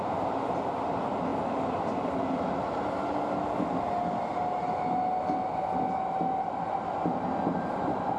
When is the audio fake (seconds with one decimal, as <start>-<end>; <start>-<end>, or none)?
none